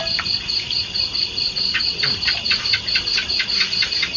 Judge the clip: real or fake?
real